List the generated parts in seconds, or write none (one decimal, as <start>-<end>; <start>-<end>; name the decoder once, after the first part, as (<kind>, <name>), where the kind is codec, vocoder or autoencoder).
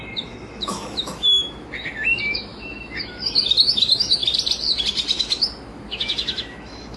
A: 0.0-4.2 (autoencoder, DAC-VAE); 5.2-7.0